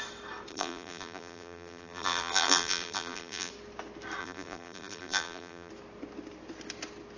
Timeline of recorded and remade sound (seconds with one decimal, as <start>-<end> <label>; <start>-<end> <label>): 0.0-0.5 recorded; 0.5-3.5 remade; 3.5-4.2 recorded; 4.2-5.7 remade; 5.7-7.2 recorded